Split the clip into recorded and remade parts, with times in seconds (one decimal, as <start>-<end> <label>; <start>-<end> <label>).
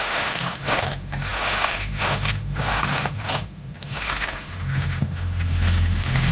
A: 0.0-6.3 remade